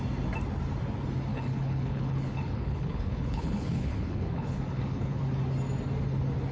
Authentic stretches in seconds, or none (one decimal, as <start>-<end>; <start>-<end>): 0.0-1.3; 5.2-6.5